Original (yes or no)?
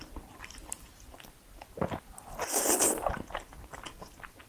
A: yes